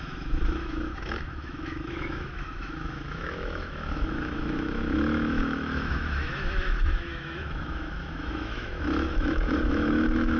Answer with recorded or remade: remade